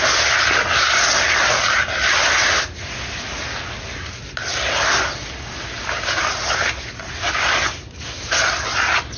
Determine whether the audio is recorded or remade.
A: recorded